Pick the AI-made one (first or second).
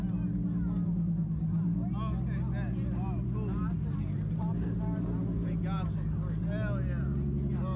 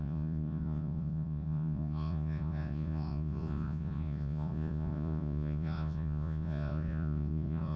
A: second